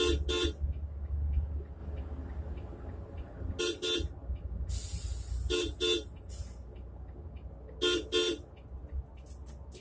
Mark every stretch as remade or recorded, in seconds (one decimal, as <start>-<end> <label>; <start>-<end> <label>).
0.0-9.8 recorded